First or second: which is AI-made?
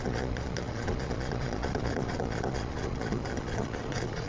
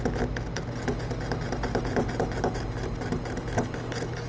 first